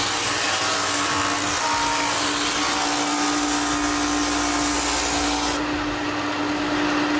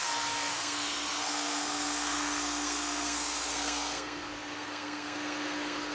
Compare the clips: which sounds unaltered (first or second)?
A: first